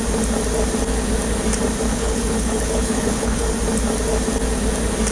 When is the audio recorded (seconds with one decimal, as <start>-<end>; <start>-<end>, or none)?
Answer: 0.0-1.9; 3.4-5.1